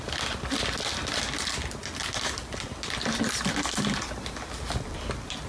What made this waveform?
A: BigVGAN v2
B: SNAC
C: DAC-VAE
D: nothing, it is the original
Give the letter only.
D